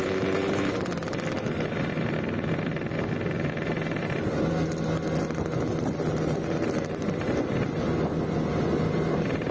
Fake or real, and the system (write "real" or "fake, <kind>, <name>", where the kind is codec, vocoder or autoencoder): real